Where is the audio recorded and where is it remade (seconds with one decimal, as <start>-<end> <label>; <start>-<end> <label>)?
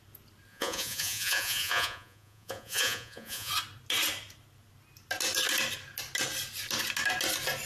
0.0-0.5 recorded; 0.5-3.5 remade; 3.5-7.7 recorded